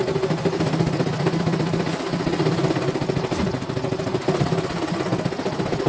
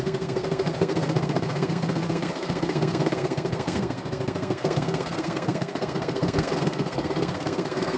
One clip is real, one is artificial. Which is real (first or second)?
first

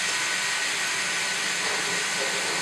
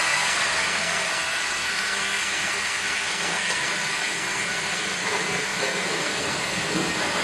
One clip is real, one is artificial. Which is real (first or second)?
first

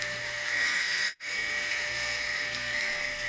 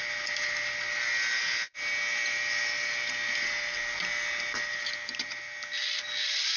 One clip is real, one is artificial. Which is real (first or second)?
second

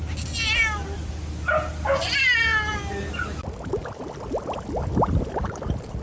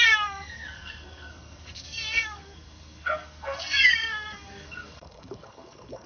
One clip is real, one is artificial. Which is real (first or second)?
first